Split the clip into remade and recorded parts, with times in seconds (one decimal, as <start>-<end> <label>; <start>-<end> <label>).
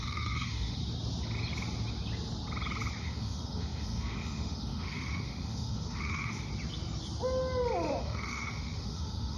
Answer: 0.0-0.8 remade; 0.8-3.0 recorded; 3.0-6.5 remade; 6.5-8.0 recorded; 8.0-9.4 remade